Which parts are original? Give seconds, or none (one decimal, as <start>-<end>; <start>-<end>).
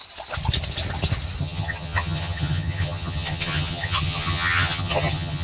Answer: 0.0-1.4